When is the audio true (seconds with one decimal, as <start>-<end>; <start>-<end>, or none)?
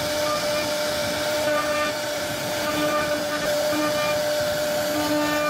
0.0-1.0; 3.8-5.5